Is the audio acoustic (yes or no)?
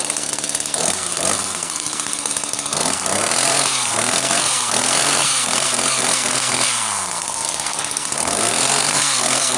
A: no